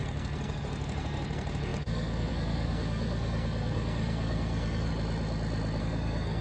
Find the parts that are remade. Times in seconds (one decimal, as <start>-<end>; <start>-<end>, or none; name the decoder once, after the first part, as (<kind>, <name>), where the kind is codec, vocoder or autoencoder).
0.0-4.9 (codec, SNAC); 5.8-6.4